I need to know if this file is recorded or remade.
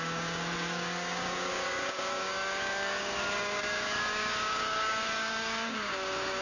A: remade